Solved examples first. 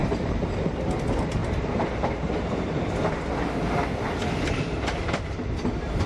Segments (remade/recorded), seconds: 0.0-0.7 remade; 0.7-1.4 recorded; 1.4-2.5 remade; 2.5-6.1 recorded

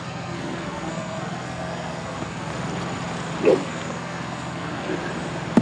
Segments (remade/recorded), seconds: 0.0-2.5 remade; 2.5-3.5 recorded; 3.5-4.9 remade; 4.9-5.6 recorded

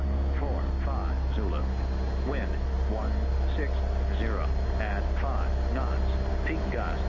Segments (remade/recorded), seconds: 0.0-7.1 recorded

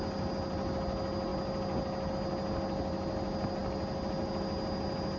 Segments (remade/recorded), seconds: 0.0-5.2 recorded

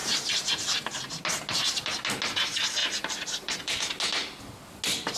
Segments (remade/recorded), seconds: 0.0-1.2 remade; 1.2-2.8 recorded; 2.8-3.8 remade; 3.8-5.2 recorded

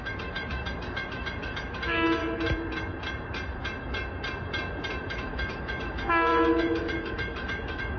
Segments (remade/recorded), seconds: 0.0-2.2 remade; 2.2-5.1 recorded; 5.1-8.0 remade